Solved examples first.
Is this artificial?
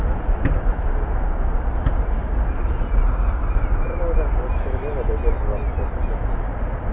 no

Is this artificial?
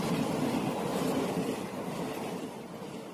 no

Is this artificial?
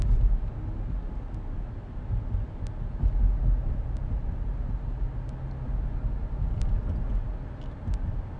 no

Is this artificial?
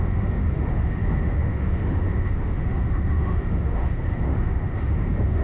yes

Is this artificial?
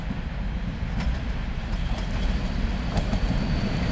no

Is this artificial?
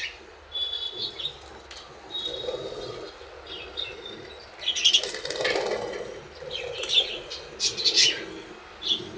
no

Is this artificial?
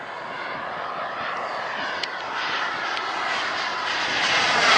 no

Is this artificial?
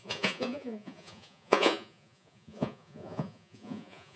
yes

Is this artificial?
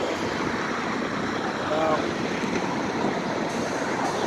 no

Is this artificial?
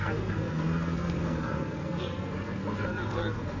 yes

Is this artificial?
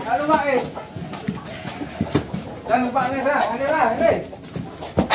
no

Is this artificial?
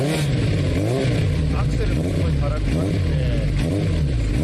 no